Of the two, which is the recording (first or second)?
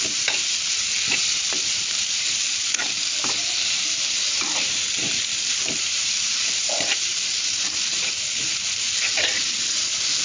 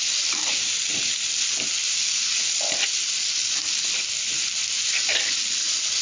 second